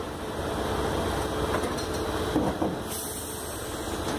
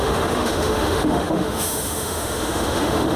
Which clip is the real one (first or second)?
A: first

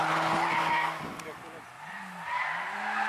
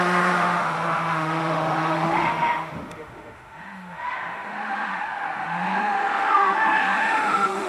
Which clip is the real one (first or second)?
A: first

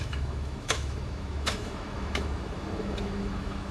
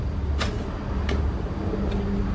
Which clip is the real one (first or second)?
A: second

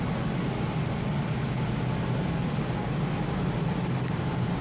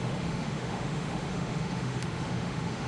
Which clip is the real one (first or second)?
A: first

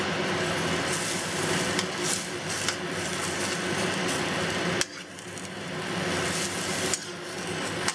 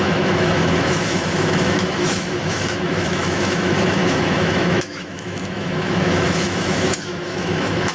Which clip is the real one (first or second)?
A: first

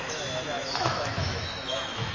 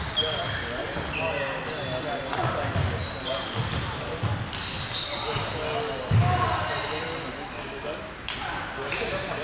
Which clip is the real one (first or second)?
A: second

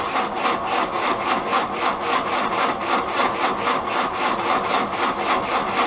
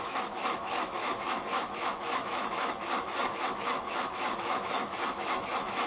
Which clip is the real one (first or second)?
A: first